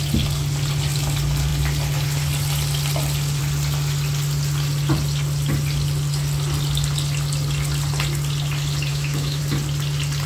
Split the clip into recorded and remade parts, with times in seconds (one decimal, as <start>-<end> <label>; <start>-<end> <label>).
0.0-8.9 recorded; 8.9-9.4 remade; 9.4-10.3 recorded

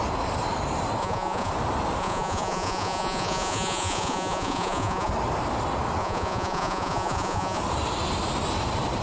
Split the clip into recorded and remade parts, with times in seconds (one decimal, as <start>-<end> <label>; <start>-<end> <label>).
0.0-1.0 recorded; 1.0-1.5 remade; 1.5-2.0 recorded; 2.0-5.1 remade; 5.1-6.0 recorded; 6.0-7.6 remade; 7.6-9.0 recorded

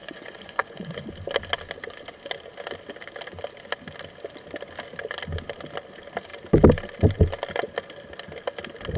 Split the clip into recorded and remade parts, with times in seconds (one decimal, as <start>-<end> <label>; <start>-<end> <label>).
0.0-1.1 remade; 1.1-9.0 recorded

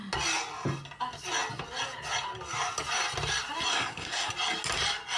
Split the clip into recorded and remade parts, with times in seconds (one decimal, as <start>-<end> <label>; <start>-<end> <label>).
0.0-3.7 recorded; 3.7-4.3 remade; 4.3-5.2 recorded

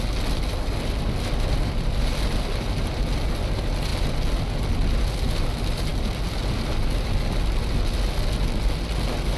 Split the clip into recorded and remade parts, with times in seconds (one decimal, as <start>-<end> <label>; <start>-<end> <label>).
0.0-9.4 recorded

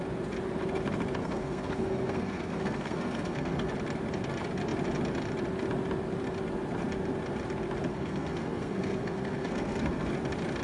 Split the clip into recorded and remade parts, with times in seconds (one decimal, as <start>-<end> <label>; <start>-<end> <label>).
0.0-1.2 recorded; 1.2-3.7 remade; 3.7-7.9 recorded; 7.9-10.1 remade; 10.1-10.6 recorded

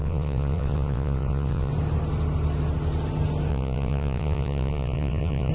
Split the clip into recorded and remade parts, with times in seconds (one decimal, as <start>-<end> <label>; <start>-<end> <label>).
0.0-1.7 remade; 1.7-3.5 recorded; 3.5-5.5 remade